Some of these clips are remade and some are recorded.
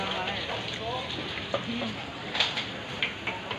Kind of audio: recorded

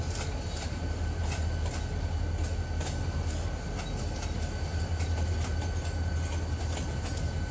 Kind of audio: recorded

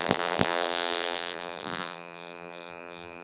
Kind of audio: remade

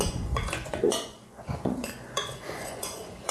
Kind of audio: remade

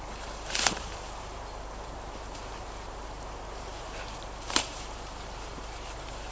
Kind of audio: remade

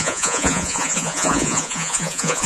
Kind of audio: remade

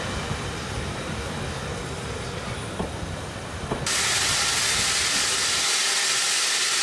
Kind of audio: recorded